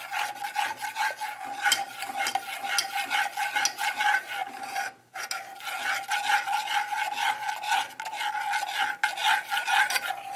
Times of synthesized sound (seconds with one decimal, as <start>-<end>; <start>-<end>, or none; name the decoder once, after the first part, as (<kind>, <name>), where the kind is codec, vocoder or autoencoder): none